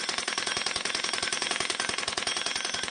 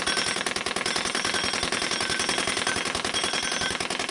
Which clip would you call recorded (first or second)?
second